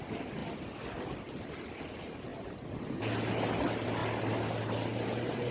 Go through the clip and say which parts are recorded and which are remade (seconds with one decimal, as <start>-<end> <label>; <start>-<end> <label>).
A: 0.0-5.5 recorded